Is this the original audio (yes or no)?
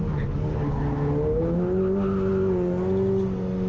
yes